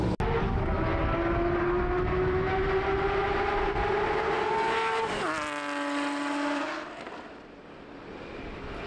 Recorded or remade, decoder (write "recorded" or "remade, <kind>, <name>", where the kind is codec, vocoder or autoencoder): recorded